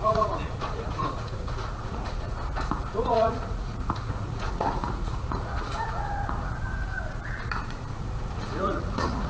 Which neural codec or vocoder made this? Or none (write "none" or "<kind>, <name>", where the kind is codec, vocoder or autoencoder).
vocoder, Vocos